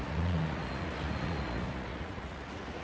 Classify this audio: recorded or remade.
remade